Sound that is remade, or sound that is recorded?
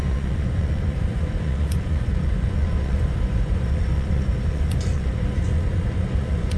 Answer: remade